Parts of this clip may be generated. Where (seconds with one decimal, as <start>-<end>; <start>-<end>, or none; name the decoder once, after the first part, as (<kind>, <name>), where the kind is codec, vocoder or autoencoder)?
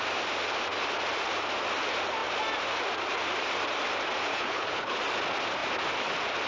4.3-5.0 (codec, HILCodec)